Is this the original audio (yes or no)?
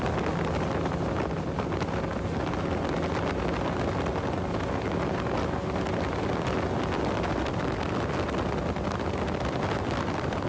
yes